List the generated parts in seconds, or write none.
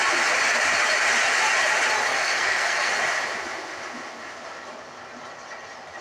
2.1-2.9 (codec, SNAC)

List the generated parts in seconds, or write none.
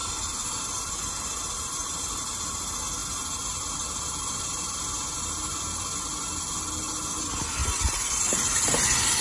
none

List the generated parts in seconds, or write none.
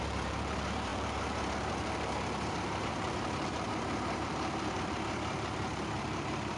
0.0-6.6 (vocoder, BigVGAN v2)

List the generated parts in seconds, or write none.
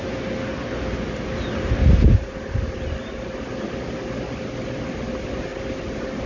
none